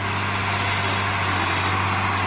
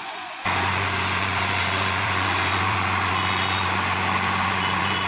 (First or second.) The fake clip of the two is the second